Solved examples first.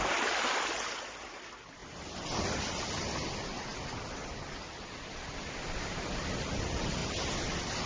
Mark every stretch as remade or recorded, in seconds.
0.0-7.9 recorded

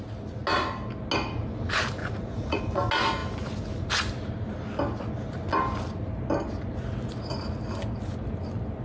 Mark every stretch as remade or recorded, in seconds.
0.0-2.0 recorded; 2.0-2.6 remade; 2.6-8.8 recorded

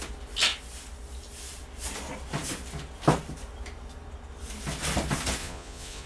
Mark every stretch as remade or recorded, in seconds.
0.0-5.4 recorded; 5.4-6.1 remade

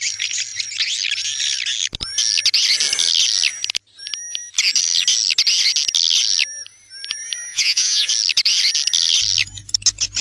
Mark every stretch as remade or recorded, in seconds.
0.0-7.5 recorded; 7.5-8.1 remade; 8.1-10.2 recorded